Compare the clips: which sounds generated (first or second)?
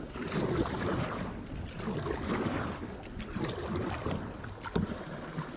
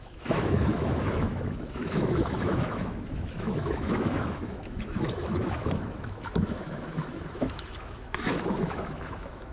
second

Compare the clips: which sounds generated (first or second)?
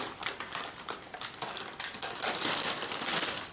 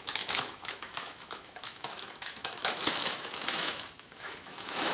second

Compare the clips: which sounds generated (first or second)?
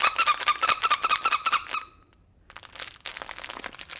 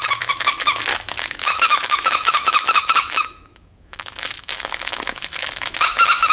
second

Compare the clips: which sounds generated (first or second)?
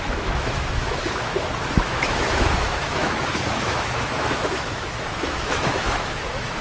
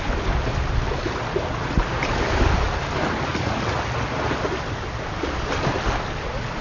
first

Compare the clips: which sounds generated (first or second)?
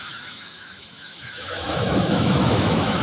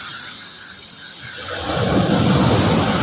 first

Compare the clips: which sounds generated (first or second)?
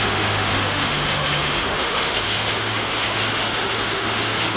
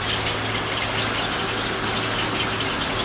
first